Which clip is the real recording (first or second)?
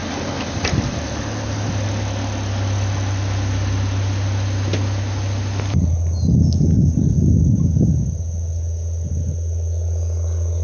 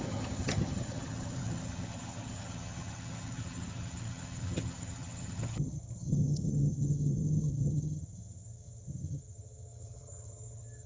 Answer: first